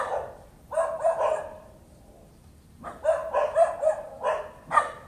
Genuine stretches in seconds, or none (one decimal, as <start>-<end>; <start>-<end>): 0.0-5.1